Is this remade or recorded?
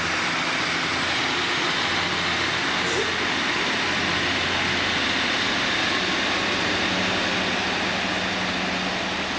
recorded